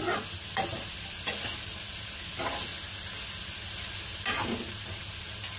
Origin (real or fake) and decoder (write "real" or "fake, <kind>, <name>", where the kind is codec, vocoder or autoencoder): real